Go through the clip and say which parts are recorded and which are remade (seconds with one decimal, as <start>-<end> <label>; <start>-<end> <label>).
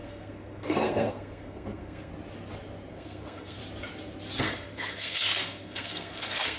0.0-2.1 remade; 2.1-2.9 recorded; 2.9-3.6 remade; 3.6-4.4 recorded; 4.4-6.6 remade